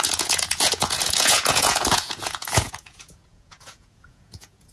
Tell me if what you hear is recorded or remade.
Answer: remade